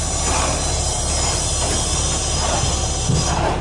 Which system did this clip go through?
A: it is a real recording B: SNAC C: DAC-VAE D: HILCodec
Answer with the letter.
A